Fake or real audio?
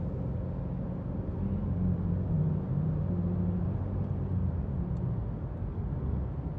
real